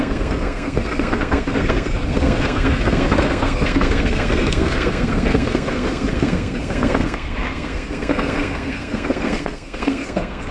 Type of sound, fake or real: fake